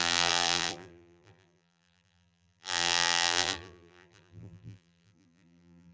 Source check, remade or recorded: remade